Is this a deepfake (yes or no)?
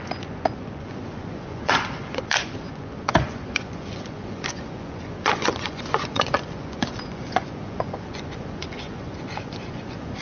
yes